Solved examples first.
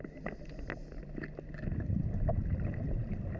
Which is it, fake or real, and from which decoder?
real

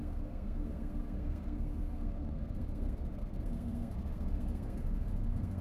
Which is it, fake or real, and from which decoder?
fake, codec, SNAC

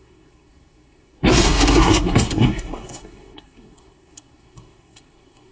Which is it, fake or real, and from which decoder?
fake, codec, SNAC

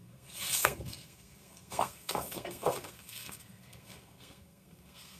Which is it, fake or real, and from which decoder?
fake, codec, SNAC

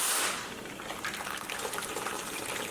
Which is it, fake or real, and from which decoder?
real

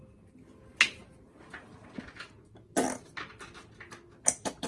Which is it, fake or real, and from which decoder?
real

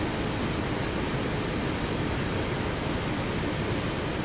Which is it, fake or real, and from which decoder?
real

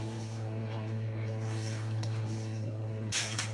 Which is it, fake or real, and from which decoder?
fake, codec, SNAC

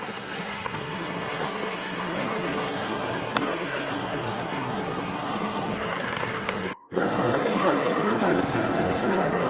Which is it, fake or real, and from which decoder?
fake, codec, SNAC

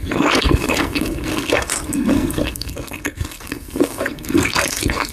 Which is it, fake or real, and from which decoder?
fake, codec, SNAC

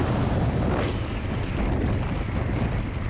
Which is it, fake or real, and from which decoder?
real